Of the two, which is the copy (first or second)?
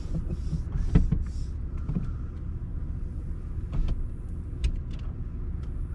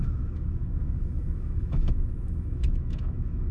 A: second